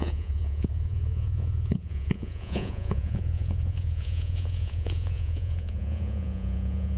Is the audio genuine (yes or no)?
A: no